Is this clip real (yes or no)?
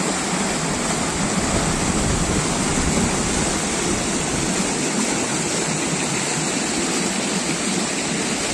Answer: yes